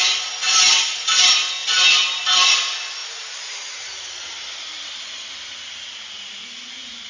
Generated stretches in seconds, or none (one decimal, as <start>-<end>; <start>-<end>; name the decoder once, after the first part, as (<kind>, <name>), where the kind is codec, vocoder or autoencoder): 3.0-5.3 (vocoder, BigVGAN v2)